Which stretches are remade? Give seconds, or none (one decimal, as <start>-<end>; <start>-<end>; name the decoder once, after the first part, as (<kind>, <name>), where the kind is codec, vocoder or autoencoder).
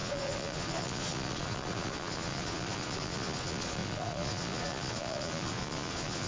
0.0-6.3 (vocoder, Vocos)